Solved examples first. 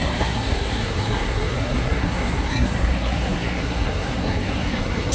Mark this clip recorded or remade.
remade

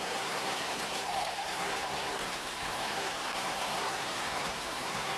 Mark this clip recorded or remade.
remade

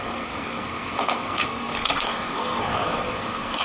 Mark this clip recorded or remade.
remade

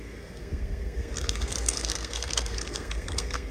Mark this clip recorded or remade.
remade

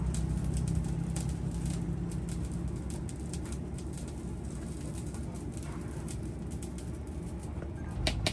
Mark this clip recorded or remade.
recorded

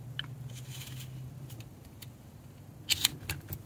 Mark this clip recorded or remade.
recorded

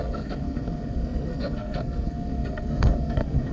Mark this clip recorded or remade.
remade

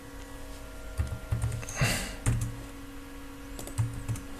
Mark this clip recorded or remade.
recorded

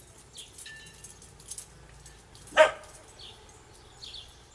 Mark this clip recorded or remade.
recorded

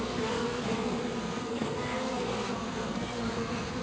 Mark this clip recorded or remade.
remade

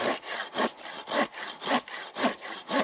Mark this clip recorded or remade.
recorded